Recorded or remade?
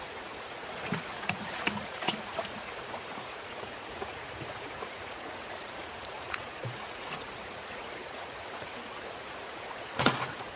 remade